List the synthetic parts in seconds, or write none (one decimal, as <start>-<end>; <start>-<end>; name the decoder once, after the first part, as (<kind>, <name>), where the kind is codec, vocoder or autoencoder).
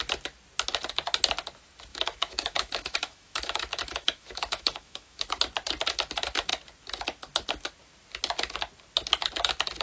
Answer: 1.9-5.3 (autoencoder, DAC-VAE)